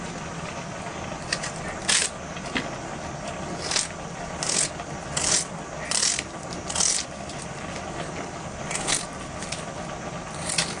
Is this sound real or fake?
real